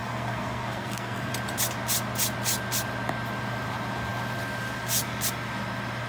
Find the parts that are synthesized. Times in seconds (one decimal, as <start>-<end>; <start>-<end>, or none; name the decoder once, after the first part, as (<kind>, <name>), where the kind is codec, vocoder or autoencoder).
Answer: 0.0-1.3 (codec, SNAC)